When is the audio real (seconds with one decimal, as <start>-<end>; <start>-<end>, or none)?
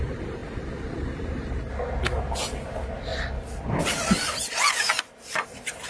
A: 0.0-5.9